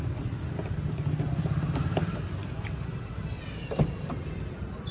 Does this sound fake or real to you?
fake